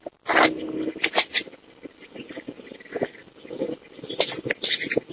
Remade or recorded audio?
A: recorded